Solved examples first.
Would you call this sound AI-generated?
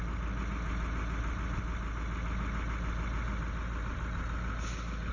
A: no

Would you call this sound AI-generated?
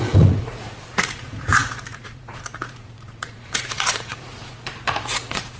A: yes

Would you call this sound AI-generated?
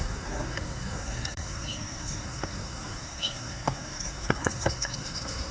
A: yes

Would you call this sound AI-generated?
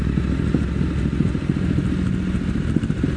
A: no